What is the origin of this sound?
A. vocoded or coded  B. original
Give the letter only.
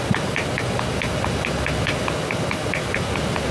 B